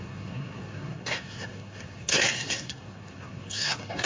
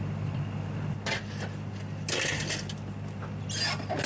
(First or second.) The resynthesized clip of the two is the first